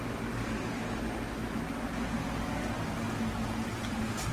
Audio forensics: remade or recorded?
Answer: recorded